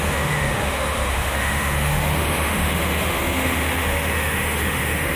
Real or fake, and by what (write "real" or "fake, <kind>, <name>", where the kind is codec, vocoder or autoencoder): fake, autoencoder, DAC-VAE